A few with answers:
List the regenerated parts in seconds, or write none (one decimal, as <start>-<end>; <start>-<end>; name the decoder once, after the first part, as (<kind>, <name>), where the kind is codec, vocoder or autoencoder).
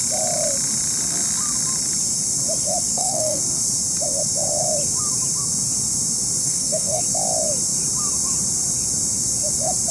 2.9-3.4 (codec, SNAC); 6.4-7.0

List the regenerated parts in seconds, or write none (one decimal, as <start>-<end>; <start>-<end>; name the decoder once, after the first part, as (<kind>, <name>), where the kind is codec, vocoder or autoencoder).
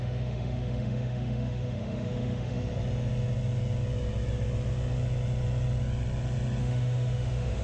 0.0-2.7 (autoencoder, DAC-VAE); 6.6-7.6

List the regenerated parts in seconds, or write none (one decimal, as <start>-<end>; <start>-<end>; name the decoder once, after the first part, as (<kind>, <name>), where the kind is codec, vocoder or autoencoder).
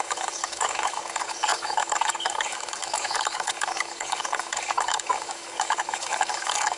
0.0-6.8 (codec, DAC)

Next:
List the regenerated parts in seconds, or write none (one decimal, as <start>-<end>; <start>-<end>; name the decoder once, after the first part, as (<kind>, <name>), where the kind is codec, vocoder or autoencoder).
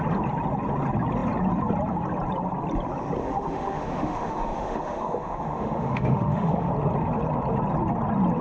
3.2-6.7 (autoencoder, DAC-VAE)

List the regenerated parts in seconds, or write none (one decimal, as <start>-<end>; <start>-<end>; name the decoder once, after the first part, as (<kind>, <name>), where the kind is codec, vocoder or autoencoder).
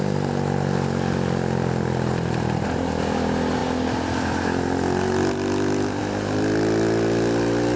none